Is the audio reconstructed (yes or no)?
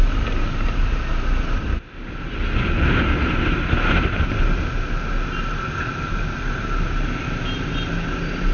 no